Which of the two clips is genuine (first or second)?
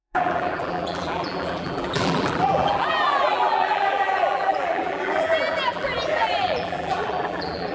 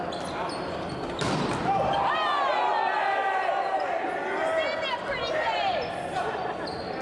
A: second